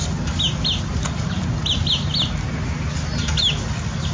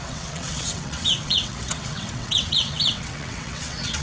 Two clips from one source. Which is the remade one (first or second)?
second